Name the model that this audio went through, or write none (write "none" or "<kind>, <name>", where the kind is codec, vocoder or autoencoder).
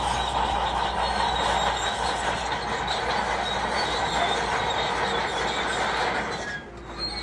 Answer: none